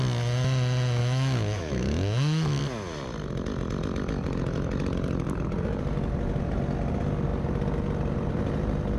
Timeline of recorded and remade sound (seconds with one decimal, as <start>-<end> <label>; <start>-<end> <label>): 0.0-1.0 recorded; 1.0-2.6 remade; 2.6-9.0 recorded